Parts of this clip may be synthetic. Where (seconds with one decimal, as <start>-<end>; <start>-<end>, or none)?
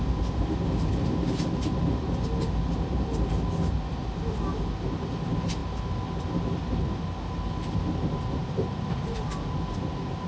8.4-9.3